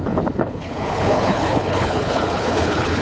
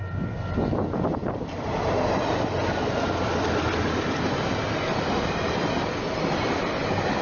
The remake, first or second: first